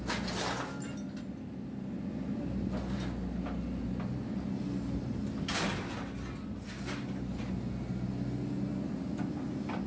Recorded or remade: recorded